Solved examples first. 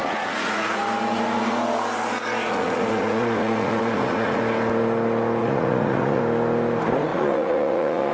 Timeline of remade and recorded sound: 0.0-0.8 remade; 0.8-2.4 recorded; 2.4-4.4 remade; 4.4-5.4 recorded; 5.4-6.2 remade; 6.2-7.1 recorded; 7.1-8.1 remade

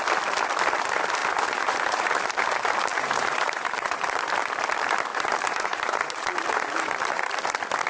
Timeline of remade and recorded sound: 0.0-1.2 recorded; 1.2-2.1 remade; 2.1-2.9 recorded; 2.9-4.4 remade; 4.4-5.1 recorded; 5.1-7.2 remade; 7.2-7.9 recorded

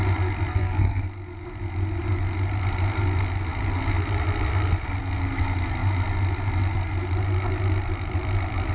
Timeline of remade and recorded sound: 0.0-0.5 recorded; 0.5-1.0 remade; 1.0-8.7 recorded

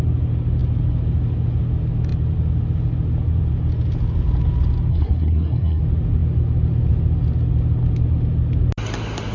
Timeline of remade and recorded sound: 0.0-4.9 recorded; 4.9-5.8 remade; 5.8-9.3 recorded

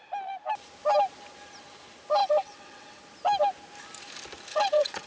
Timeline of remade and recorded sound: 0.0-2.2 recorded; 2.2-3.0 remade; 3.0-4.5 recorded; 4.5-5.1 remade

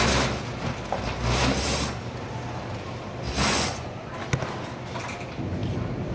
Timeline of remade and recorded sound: 0.0-3.5 recorded; 3.5-4.1 remade; 4.1-6.1 recorded